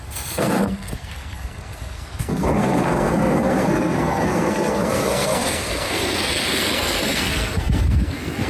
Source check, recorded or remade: remade